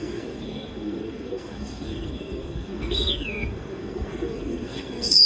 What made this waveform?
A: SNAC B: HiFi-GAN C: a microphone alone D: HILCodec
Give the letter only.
A